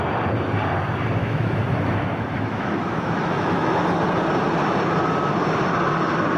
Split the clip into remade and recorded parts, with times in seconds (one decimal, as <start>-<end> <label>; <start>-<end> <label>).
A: 0.0-1.2 recorded; 1.2-3.8 remade; 3.8-6.4 recorded